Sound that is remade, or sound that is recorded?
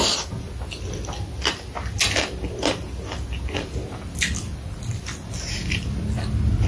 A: recorded